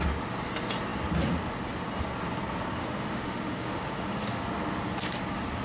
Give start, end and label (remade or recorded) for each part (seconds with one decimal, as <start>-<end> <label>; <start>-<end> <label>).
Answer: 0.0-2.8 recorded; 2.8-4.4 remade; 4.4-5.6 recorded